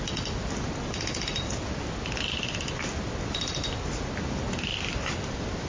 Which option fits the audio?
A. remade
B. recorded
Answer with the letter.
B